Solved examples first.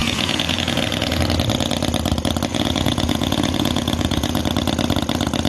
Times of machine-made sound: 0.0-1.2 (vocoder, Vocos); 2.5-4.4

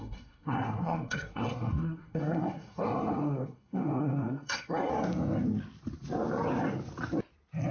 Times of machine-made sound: 0.0-4.9 (codec, SNAC)

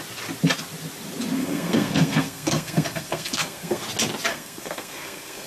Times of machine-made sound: 1.4-3.8 (codec, SNAC); 4.3-5.5

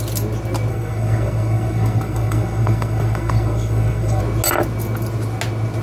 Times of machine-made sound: 0.7-4.2 (codec, SNAC)